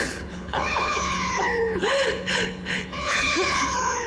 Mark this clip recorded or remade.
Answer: remade